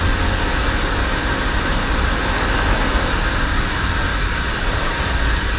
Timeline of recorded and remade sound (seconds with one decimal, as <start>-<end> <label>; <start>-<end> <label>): 0.0-1.0 recorded; 1.0-2.2 remade; 2.2-4.1 recorded; 4.1-5.6 remade